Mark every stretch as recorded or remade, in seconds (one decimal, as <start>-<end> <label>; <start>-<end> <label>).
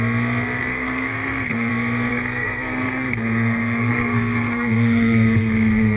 0.0-0.6 recorded; 0.6-1.7 remade; 1.7-2.1 recorded; 2.1-6.0 remade